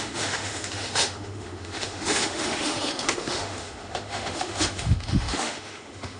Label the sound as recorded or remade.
remade